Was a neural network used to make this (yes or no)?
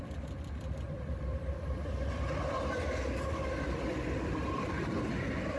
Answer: no